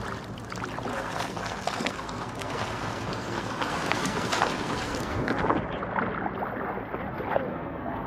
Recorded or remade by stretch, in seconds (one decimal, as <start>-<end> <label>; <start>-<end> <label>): 0.0-0.9 recorded; 0.9-5.6 remade; 5.6-7.5 recorded; 7.5-8.1 remade

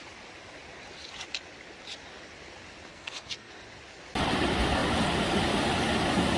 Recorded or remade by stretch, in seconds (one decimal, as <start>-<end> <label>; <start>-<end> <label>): 0.0-2.9 recorded; 2.9-3.5 remade; 3.5-6.4 recorded